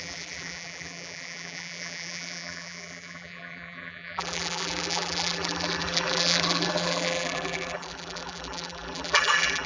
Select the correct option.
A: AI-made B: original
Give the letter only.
A